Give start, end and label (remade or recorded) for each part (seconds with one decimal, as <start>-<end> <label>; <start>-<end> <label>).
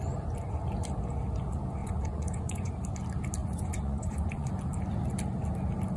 0.0-1.8 recorded; 1.8-2.7 remade; 2.7-3.4 recorded; 3.4-4.5 remade; 4.5-6.0 recorded